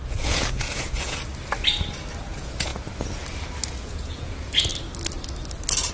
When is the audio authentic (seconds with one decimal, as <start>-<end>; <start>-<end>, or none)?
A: 1.3-2.2; 2.7-3.7; 4.7-5.9